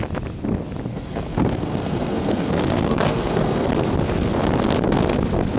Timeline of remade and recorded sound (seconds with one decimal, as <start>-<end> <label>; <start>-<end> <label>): 0.0-0.9 recorded; 0.9-3.7 remade; 3.7-5.6 recorded